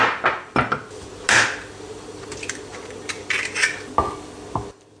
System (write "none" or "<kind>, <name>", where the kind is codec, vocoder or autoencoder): none